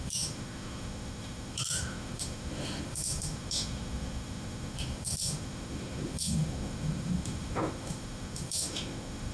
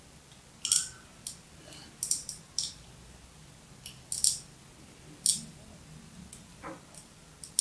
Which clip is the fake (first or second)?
first